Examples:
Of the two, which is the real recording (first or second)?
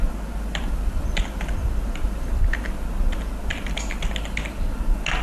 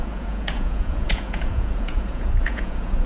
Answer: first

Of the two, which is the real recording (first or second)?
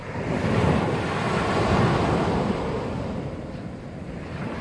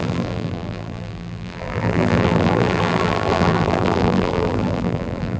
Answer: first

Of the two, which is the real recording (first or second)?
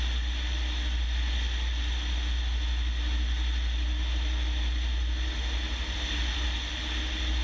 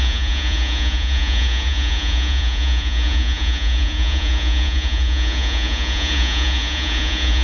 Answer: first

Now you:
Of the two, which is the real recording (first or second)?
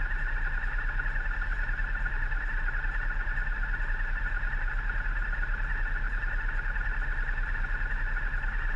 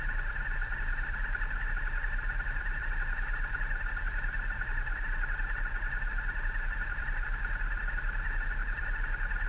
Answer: first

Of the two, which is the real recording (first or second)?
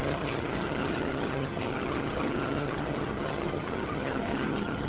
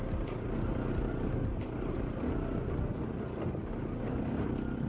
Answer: second